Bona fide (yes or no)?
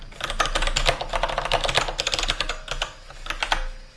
yes